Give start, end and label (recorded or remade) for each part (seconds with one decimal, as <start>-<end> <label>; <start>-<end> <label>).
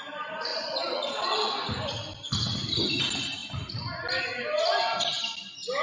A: 0.0-0.5 recorded; 0.5-1.5 remade; 1.5-5.8 recorded